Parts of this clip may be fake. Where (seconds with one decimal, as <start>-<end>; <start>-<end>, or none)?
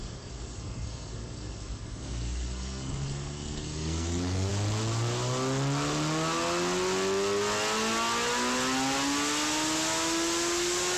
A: 0.0-4.5